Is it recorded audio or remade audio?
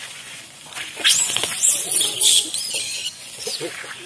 remade